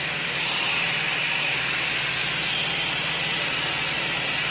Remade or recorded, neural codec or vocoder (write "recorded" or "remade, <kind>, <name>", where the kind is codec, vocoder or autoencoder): recorded